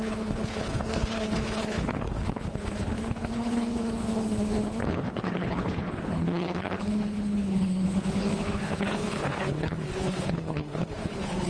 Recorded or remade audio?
remade